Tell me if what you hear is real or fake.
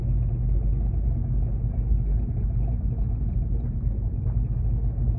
real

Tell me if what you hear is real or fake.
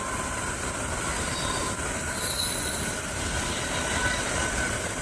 real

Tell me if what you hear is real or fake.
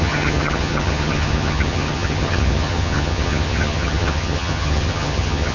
fake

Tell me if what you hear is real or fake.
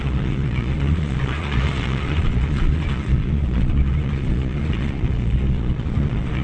fake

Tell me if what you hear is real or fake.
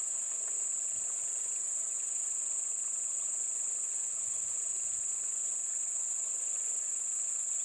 fake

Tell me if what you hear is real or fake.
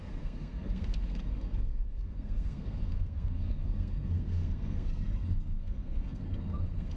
fake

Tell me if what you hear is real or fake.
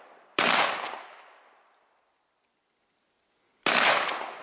real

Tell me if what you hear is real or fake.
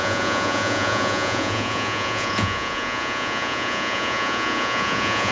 fake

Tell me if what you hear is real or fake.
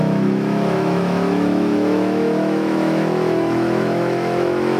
fake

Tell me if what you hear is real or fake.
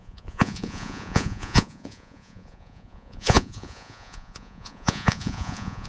fake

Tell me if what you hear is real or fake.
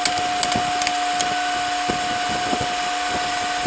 real